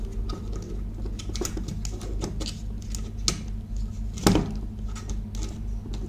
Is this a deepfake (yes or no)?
no